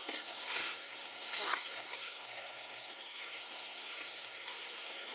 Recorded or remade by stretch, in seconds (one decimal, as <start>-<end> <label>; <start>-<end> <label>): 0.0-5.1 remade